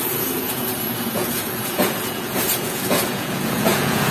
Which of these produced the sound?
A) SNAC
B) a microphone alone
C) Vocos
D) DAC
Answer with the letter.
C